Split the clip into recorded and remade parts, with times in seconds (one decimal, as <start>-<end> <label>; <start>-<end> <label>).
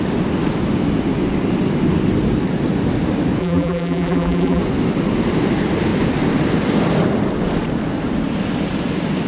0.0-3.4 recorded; 3.4-4.6 remade; 4.6-9.3 recorded